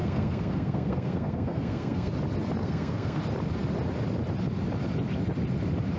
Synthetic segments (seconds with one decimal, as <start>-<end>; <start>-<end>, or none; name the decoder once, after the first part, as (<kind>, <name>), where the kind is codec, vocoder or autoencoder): 0.0-2.1 (codec, SNAC); 2.6-3.2